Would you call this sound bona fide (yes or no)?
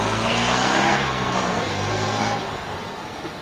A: no